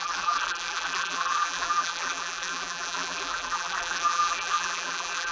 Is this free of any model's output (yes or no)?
no